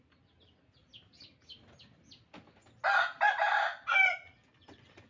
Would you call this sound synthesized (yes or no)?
no